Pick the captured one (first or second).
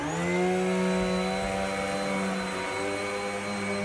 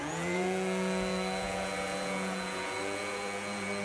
first